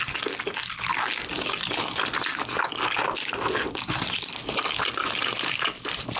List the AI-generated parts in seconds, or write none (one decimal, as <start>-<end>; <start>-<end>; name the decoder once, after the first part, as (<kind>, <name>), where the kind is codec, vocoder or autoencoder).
none